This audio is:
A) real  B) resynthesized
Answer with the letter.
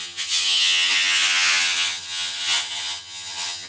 B